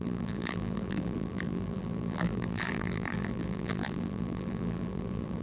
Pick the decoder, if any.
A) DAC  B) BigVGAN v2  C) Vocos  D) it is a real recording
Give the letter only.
B